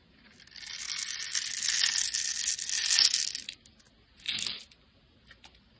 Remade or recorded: recorded